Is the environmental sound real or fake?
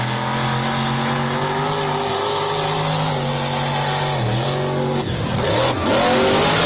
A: real